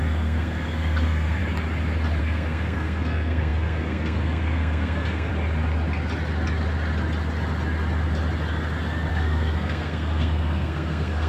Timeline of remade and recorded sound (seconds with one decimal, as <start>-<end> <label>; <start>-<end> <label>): 0.0-1.4 remade; 1.4-2.2 recorded; 2.2-5.3 remade; 5.3-9.1 recorded; 9.1-11.3 remade

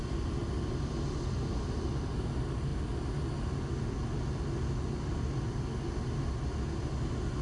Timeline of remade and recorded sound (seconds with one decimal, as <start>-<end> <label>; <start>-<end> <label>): 0.0-7.4 recorded

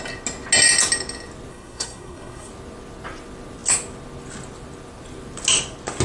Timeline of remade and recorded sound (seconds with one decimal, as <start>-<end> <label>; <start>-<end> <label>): 0.0-1.5 recorded; 1.5-2.5 remade; 2.5-6.0 recorded